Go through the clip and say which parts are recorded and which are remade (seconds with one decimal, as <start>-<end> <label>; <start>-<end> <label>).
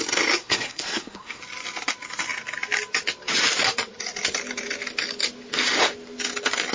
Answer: 0.0-0.4 recorded; 0.4-1.4 remade; 1.4-6.7 recorded